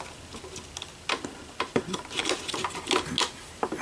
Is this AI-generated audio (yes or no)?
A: no